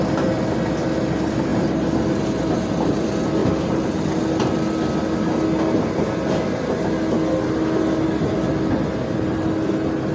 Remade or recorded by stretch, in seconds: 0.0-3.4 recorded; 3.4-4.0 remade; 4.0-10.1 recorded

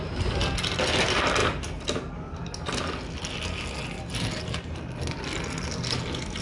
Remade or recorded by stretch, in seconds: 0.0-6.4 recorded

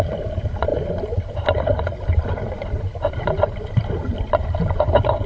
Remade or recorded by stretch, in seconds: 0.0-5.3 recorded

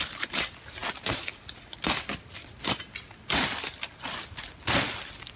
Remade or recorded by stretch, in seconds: 0.0-5.4 recorded

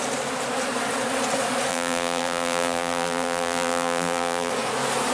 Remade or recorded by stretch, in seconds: 0.0-1.7 recorded; 1.7-4.5 remade; 4.5-5.1 recorded

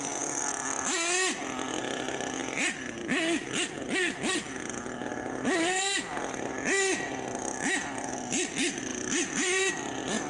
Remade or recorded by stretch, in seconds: 0.0-8.9 recorded; 8.9-9.7 remade; 9.7-10.3 recorded

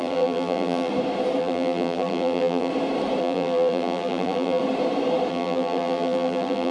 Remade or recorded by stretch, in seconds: 0.0-0.9 remade; 0.9-1.4 recorded; 1.4-2.7 remade; 2.7-3.2 recorded; 3.2-4.6 remade; 4.6-5.3 recorded; 5.3-6.7 remade